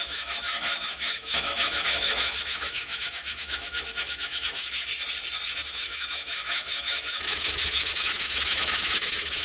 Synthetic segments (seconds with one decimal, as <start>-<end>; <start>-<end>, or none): 0.0-4.9; 5.5-9.4